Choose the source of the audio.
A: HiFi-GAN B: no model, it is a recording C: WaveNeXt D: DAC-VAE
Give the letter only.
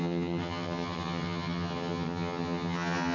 A